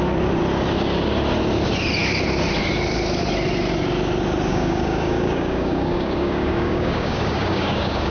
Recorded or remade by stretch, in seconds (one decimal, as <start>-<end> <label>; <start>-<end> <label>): 0.0-4.5 recorded; 4.5-8.1 remade